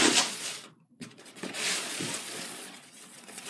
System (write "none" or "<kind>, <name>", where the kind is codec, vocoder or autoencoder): vocoder, Vocos